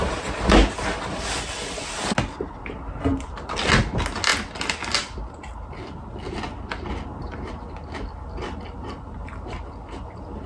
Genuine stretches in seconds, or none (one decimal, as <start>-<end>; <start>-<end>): 0.0-10.5